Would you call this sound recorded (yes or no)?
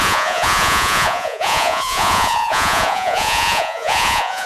no